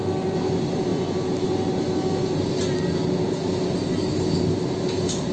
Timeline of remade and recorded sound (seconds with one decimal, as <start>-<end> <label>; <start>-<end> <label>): 0.0-5.3 recorded